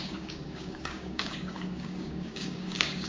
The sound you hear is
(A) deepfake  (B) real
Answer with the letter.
A